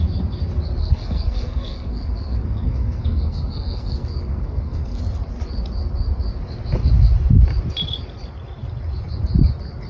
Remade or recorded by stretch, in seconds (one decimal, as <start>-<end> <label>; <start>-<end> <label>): 0.0-0.8 recorded; 0.8-5.0 remade; 5.0-9.9 recorded